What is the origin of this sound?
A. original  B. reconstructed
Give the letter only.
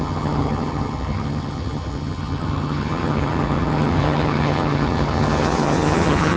B